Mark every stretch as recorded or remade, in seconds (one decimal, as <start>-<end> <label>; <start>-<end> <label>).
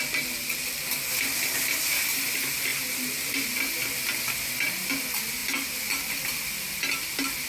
0.0-7.5 recorded